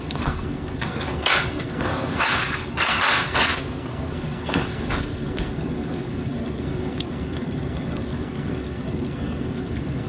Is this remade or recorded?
remade